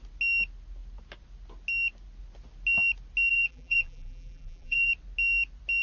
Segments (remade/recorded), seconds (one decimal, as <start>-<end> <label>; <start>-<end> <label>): 0.0-3.3 recorded; 3.3-4.9 remade; 4.9-5.8 recorded